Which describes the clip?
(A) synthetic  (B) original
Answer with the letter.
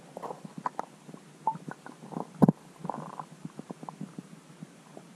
B